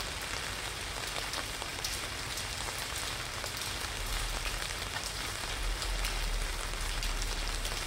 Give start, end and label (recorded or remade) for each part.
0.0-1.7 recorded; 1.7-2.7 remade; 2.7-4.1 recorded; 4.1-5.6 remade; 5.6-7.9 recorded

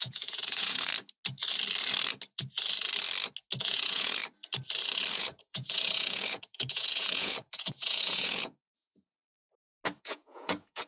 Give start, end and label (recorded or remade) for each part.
0.0-0.9 remade; 0.9-3.6 recorded; 3.6-4.2 remade; 4.2-5.1 recorded; 5.1-9.2 remade; 9.2-10.0 recorded; 10.0-10.9 remade

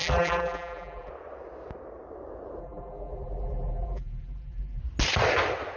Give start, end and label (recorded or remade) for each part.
0.0-1.1 remade; 1.1-2.6 recorded; 2.6-4.8 remade; 4.8-5.8 recorded

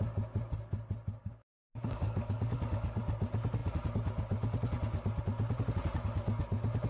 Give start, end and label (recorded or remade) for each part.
0.0-1.2 recorded; 1.2-3.0 remade; 3.0-6.9 recorded

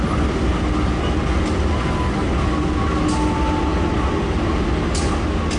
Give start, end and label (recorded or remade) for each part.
0.0-5.6 recorded

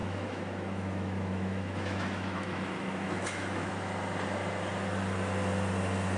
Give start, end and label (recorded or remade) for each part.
0.0-3.7 remade; 3.7-6.2 recorded

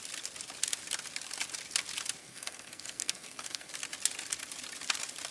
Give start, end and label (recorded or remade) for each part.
0.0-2.2 recorded; 2.2-3.7 remade; 3.7-5.3 recorded